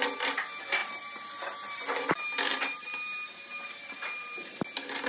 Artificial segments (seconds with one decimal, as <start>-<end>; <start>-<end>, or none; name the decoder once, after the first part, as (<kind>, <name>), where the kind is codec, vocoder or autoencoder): none